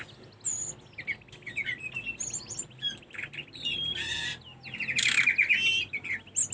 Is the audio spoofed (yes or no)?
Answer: no